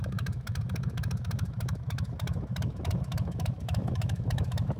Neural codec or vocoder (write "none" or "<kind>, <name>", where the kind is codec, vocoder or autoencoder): autoencoder, DAC-VAE